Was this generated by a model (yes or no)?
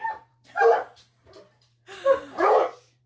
yes